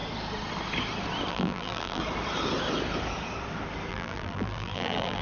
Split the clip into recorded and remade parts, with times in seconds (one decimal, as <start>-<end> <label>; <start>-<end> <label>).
0.0-1.3 recorded; 1.3-2.0 remade; 2.0-3.9 recorded; 3.9-5.2 remade